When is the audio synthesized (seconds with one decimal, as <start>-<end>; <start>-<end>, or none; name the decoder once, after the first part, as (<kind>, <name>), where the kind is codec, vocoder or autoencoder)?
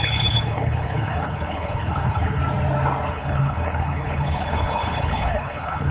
0.0-2.4 (codec, HILCodec); 3.1-5.9